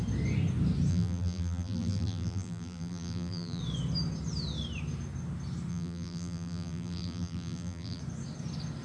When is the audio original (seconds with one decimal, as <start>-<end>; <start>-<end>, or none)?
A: 0.0-0.9; 3.6-5.7; 8.0-8.8

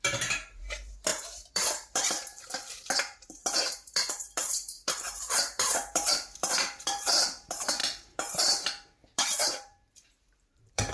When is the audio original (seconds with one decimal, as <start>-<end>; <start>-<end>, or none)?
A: none

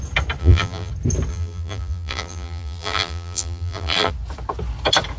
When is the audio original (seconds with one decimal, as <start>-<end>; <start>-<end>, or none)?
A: 0.0-0.4; 0.9-1.3; 4.1-5.2